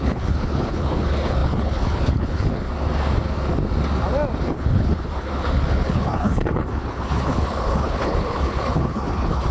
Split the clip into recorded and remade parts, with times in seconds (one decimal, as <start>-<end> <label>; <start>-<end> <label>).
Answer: 0.0-2.7 remade; 2.7-4.4 recorded; 4.4-9.5 remade